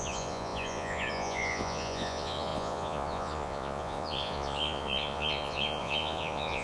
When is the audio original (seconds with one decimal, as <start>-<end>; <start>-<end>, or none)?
none